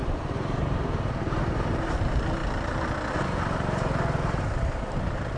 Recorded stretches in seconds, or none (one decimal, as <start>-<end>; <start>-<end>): 2.4-3.1